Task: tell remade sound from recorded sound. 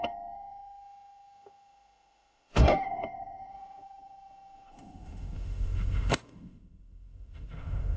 remade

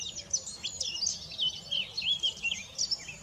recorded